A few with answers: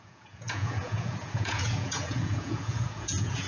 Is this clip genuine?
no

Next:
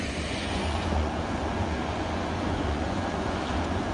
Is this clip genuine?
no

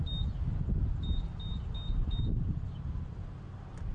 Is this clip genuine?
yes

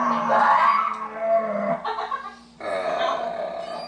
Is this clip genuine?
yes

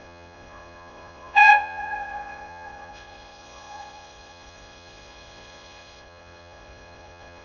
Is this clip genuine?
no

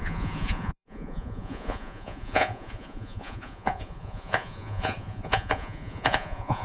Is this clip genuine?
no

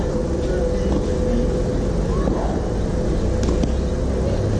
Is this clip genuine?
yes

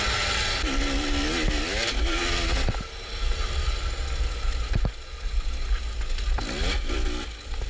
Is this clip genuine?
yes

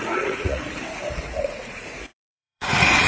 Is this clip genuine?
no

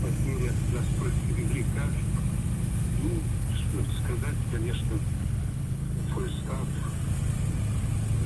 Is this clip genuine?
yes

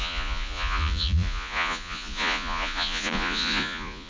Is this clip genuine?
no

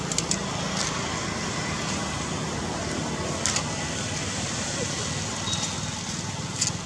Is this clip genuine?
yes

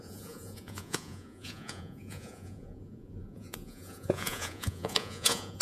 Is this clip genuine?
no